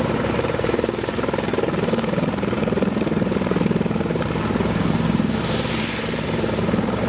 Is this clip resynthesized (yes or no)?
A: yes